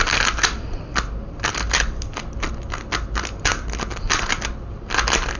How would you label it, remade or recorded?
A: recorded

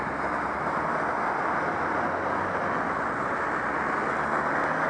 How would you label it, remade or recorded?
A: recorded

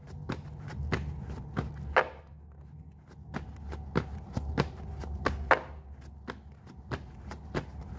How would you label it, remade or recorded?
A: recorded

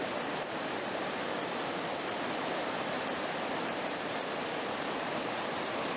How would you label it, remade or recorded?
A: remade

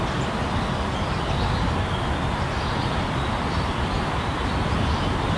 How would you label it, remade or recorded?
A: recorded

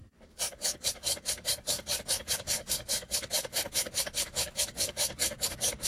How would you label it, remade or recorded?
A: remade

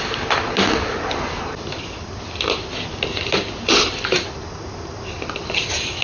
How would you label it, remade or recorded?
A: recorded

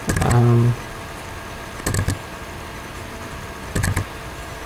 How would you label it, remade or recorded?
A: recorded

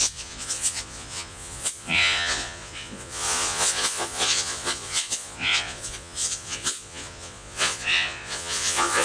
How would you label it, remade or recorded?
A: remade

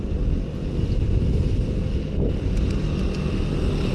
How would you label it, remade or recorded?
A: recorded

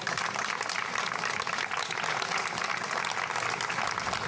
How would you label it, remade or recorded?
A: recorded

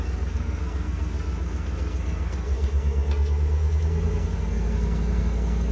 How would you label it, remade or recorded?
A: remade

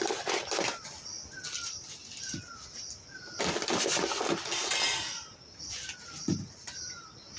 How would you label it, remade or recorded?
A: recorded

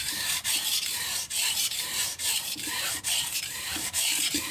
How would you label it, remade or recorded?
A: remade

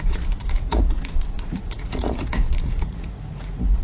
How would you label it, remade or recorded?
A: remade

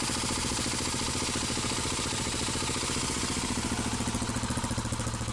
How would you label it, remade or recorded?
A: recorded